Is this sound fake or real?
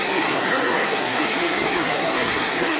fake